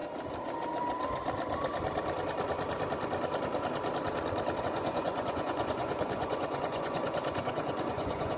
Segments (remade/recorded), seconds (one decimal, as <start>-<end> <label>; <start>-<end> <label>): 0.0-4.6 recorded; 4.6-8.4 remade